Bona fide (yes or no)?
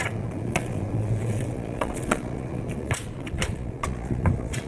no